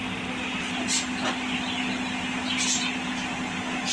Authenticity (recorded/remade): recorded